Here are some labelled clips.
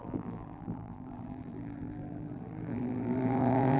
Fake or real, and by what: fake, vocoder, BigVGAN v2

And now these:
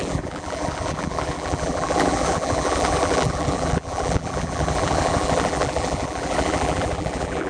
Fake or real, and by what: fake, vocoder, BigVGAN v2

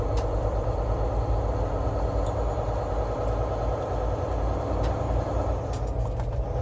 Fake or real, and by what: real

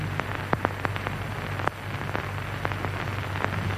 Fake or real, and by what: real